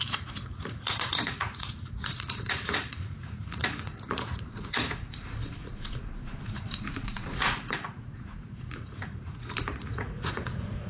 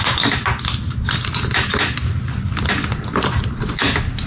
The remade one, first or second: first